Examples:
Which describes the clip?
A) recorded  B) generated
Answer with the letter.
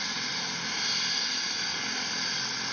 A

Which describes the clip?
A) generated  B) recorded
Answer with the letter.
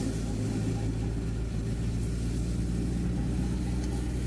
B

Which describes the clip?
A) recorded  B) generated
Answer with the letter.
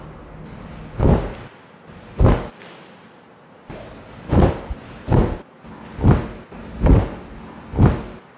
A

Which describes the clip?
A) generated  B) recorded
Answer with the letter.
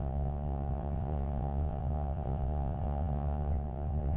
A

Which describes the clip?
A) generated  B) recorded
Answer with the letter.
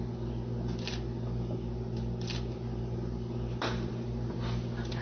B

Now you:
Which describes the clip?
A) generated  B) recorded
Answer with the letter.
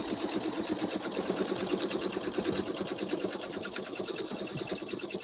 B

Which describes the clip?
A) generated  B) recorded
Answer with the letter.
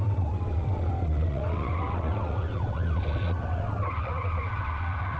A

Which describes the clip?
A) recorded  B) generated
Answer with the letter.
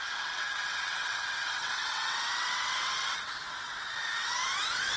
B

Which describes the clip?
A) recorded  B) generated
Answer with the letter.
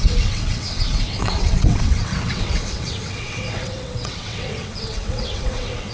B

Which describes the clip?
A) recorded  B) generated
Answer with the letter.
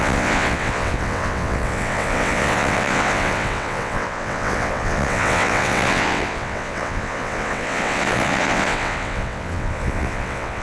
B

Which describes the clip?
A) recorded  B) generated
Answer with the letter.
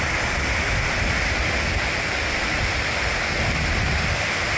A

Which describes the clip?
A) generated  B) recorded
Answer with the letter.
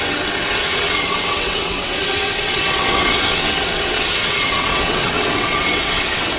A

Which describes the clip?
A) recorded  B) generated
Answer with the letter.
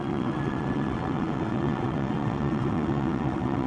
B